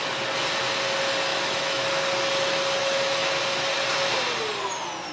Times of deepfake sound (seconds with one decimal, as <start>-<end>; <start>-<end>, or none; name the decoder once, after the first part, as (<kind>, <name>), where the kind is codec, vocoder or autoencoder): 1.3-1.9 (autoencoder, DAC-VAE); 2.8-3.4